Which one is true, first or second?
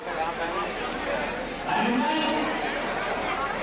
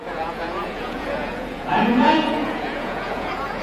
first